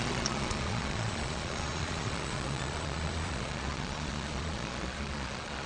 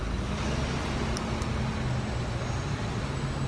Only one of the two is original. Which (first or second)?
second